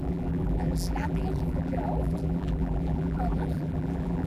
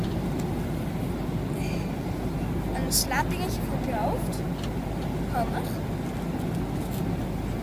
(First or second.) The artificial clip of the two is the first